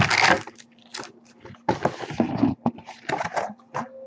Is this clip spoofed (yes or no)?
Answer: no